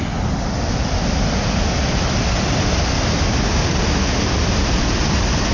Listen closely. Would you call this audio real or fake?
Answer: real